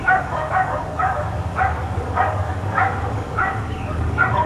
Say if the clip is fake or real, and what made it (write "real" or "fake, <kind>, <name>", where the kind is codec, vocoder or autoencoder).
fake, codec, DAC